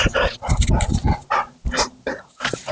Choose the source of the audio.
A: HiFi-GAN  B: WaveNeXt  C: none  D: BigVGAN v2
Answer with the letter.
C